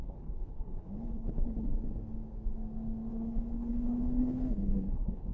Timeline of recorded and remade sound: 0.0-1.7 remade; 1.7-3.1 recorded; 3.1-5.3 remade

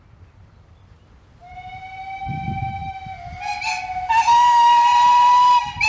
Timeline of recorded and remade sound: 0.0-5.9 recorded

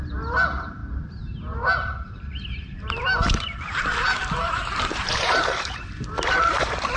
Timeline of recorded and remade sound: 0.0-7.0 remade

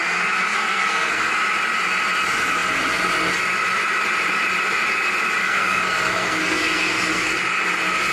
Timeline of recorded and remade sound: 0.0-0.5 recorded; 0.5-1.3 remade; 1.3-5.4 recorded; 5.4-7.4 remade; 7.4-8.1 recorded

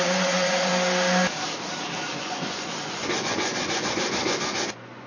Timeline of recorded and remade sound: 0.0-0.7 remade; 0.7-2.0 recorded; 2.0-5.1 remade

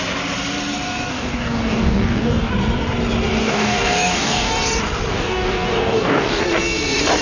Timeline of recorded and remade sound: 0.0-1.1 recorded; 1.1-2.5 remade; 2.5-3.4 recorded; 3.4-4.5 remade; 4.5-5.1 recorded; 5.1-6.4 remade; 6.4-7.2 recorded

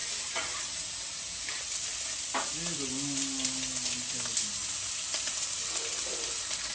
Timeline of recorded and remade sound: 0.0-1.6 remade; 1.6-6.7 recorded

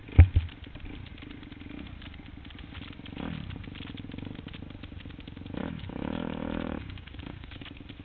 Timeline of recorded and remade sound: 0.0-5.6 recorded; 5.6-7.6 remade; 7.6-8.0 recorded